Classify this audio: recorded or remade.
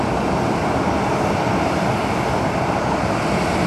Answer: remade